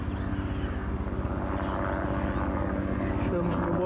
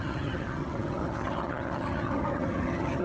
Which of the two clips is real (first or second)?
first